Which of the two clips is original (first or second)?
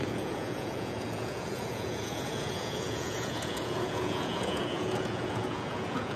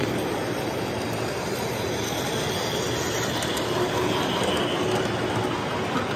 second